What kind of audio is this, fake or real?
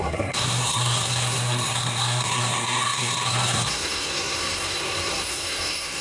fake